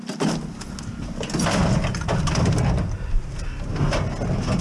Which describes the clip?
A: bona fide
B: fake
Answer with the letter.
A